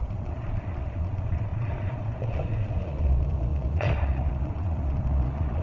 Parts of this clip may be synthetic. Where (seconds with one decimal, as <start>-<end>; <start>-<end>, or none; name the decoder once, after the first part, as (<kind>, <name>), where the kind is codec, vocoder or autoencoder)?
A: 0.0-5.6 (vocoder, Vocos)